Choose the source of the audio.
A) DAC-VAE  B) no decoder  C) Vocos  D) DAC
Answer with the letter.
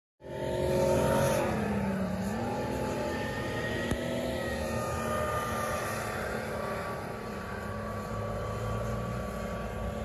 B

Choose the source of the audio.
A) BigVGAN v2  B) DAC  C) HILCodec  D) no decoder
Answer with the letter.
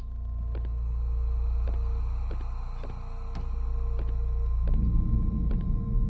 D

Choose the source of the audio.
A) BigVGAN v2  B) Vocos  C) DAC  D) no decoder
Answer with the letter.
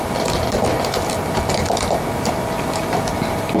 D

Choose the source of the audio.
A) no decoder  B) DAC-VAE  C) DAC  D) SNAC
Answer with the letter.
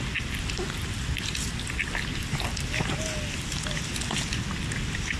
A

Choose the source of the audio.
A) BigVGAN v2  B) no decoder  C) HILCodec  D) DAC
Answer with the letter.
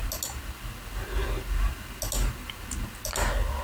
B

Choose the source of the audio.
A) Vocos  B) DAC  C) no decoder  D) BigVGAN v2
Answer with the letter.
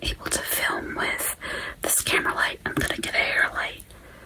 C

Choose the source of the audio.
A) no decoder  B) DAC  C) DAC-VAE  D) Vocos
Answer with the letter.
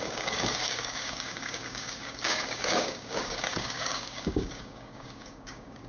B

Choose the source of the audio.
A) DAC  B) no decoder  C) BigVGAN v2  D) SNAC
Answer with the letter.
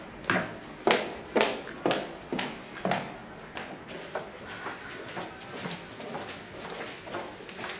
B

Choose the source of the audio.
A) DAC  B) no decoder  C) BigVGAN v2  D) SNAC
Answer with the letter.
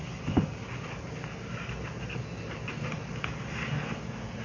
B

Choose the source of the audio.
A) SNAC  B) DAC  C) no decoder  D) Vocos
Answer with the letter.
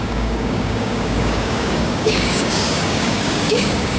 B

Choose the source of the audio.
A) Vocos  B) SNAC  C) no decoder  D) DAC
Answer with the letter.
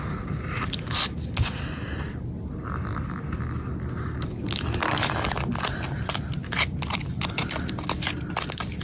C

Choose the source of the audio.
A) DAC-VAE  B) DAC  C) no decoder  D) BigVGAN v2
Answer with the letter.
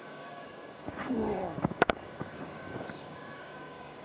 B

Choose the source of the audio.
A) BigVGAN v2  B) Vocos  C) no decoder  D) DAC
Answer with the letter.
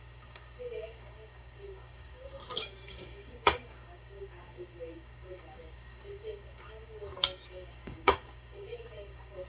D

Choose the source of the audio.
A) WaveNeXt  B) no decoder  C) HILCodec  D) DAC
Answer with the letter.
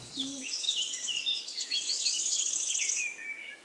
D